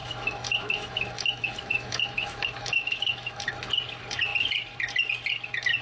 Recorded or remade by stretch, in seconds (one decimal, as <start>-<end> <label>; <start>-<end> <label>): 0.0-3.5 remade; 3.5-5.8 recorded